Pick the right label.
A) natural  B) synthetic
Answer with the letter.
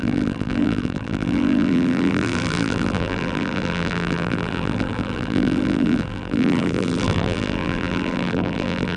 B